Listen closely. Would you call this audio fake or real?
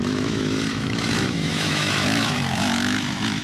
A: fake